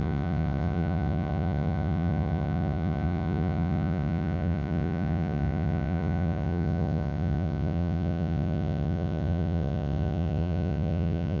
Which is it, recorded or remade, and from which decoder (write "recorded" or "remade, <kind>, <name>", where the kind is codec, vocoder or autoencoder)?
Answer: remade, vocoder, Vocos